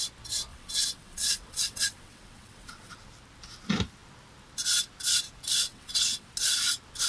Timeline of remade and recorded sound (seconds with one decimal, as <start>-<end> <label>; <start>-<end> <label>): 0.0-0.5 recorded; 0.5-2.9 remade; 2.9-5.7 recorded; 5.7-6.3 remade; 6.3-7.1 recorded